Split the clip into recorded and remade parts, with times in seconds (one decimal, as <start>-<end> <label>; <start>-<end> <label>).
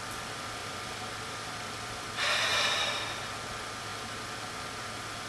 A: 0.0-0.6 recorded; 0.6-2.1 remade; 2.1-2.5 recorded; 2.5-3.0 remade; 3.0-3.9 recorded; 3.9-4.4 remade; 4.4-5.3 recorded